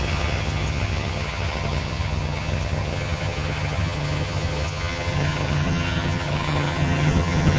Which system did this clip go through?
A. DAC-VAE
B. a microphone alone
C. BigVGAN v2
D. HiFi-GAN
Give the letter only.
D